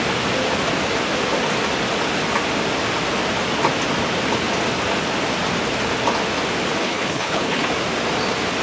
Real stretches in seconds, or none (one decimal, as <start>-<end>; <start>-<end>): 0.0-6.8; 7.7-8.6